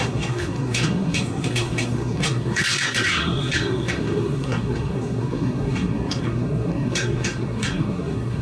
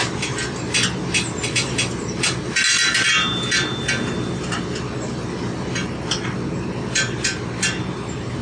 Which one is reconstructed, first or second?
first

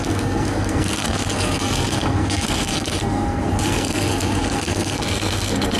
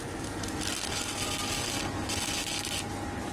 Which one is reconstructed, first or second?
first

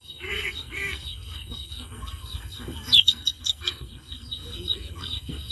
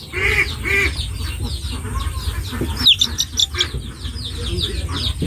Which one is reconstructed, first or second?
first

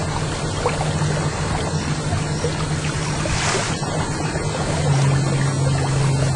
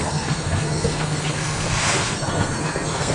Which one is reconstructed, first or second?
second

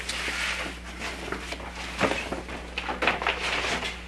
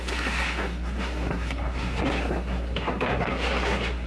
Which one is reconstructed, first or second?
second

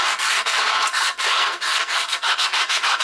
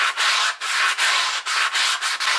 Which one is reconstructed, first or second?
first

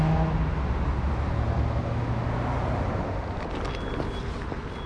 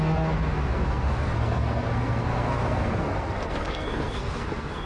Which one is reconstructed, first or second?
second